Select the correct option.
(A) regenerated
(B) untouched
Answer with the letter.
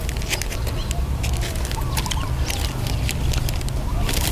B